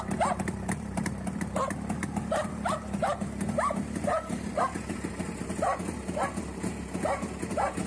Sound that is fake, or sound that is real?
real